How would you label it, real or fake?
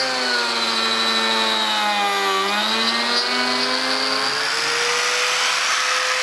real